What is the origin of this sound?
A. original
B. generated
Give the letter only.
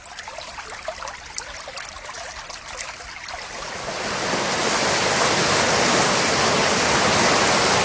A